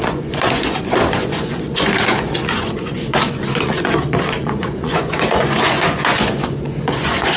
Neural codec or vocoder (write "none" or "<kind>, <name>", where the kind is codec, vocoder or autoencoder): vocoder, Vocos